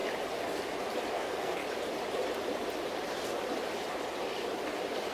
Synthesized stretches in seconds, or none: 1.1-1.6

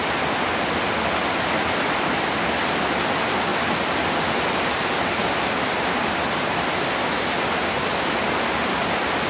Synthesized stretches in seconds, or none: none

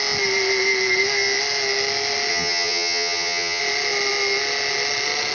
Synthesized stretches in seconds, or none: 2.3-3.6

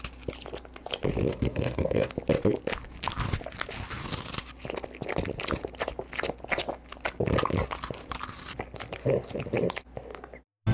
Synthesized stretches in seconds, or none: 1.3-2.1

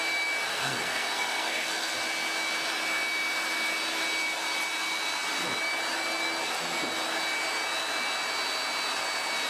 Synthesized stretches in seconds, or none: 0.5-1.9